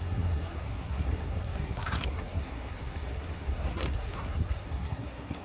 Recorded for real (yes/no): no